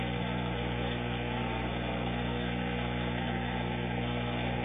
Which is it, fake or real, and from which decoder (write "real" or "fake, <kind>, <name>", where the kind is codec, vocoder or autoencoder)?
fake, codec, SNAC